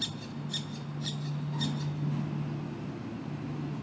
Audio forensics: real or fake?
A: real